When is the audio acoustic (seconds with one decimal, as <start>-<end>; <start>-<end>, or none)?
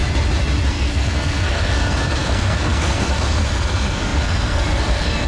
0.0-0.7